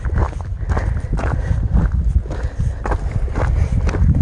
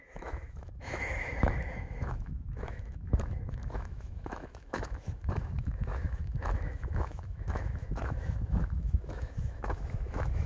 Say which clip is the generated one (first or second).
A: second